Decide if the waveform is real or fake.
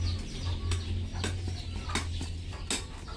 real